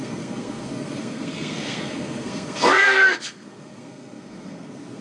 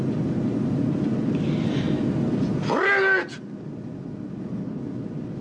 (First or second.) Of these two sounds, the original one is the second